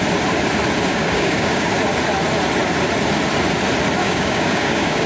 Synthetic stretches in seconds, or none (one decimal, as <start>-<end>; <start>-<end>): 0.9-1.7; 4.0-5.1